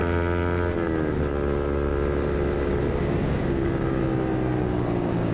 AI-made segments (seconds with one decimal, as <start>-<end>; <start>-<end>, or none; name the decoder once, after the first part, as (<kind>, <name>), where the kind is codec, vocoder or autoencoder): 3.2-4.0 (codec, DAC); 4.6-5.3